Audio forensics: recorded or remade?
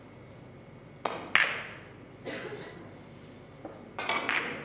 recorded